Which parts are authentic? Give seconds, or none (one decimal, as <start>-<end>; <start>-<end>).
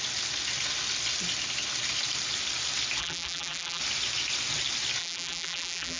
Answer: 0.0-3.0; 3.8-5.0